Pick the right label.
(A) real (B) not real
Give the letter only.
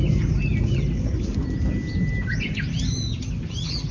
A